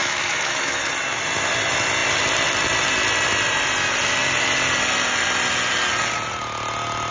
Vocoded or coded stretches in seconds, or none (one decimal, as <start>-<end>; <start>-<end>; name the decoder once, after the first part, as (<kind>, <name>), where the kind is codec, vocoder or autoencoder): 0.0-0.9 (autoencoder, DAC-VAE)